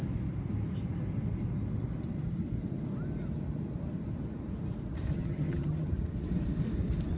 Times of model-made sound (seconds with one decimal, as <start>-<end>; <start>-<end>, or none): 5.1-5.9